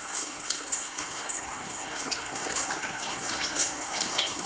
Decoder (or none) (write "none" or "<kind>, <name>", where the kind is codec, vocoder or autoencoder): codec, SNAC